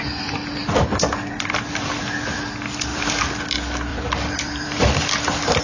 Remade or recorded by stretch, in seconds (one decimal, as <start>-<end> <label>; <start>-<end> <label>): 0.0-0.6 recorded; 0.6-2.0 remade; 2.0-2.9 recorded; 2.9-3.4 remade; 3.4-3.9 recorded; 3.9-5.6 remade